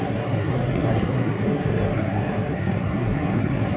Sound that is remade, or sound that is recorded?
remade